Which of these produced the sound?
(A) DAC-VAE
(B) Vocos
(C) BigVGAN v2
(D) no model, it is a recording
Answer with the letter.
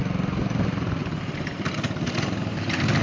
C